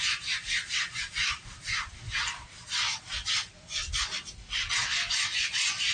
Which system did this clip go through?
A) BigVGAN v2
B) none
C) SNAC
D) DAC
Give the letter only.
B